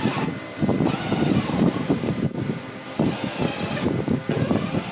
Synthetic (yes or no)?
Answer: no